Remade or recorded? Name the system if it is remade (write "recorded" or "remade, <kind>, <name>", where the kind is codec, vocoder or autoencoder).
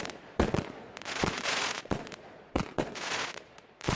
remade, vocoder, Vocos